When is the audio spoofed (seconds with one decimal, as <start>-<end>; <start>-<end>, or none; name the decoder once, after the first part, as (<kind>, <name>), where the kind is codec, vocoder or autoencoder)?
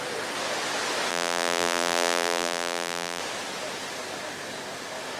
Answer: 1.1-3.2 (vocoder, BigVGAN v2)